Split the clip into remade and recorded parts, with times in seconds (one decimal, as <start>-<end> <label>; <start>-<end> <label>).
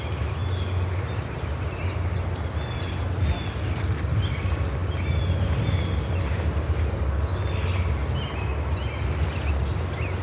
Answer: 0.0-10.2 recorded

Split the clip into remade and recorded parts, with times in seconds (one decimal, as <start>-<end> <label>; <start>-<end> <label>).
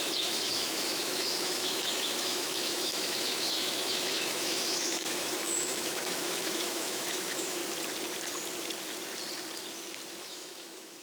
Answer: 0.0-7.6 remade; 7.6-10.2 recorded; 10.2-11.0 remade